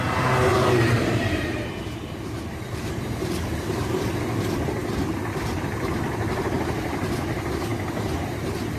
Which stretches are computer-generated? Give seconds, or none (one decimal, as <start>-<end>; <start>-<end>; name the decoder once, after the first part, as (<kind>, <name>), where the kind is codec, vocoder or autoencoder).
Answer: 0.5-4.0 (vocoder, BigVGAN v2)